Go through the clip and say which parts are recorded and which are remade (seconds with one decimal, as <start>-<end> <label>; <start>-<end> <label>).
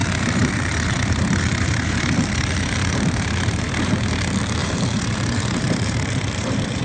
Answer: 0.0-3.9 remade; 3.9-4.6 recorded; 4.6-6.8 remade